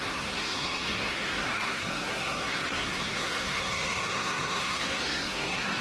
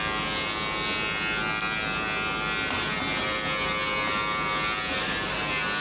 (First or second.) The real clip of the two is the second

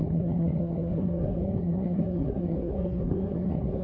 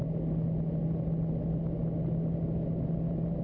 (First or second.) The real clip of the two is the second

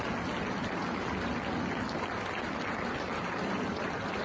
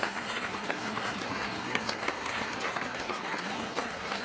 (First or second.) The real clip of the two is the first